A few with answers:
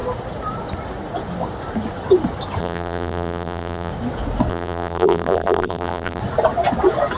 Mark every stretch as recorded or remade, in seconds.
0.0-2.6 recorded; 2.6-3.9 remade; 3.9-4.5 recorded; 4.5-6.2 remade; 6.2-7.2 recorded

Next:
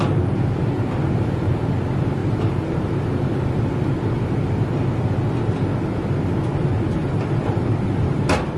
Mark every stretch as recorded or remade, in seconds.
0.0-2.2 recorded; 2.2-3.1 remade; 3.1-7.0 recorded; 7.0-8.6 remade

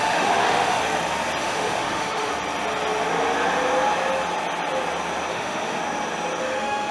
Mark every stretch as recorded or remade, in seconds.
0.0-0.8 remade; 0.8-1.4 recorded; 1.4-2.3 remade; 2.3-5.3 recorded; 5.3-5.8 remade; 5.8-6.4 recorded; 6.4-6.9 remade

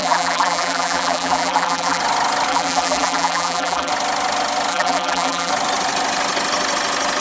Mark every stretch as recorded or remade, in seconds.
0.0-2.0 remade; 2.0-2.5 recorded; 2.5-3.9 remade; 3.9-4.7 recorded; 4.7-5.5 remade; 5.5-7.2 recorded

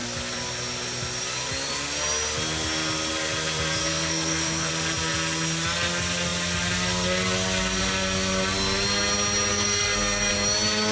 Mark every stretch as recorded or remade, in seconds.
0.0-3.8 recorded; 3.8-4.7 remade; 4.7-9.5 recorded; 9.5-10.3 remade; 10.3-10.9 recorded

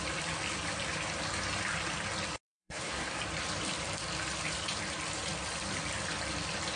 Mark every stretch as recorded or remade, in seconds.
0.0-2.6 recorded; 2.6-3.2 remade; 3.2-6.8 recorded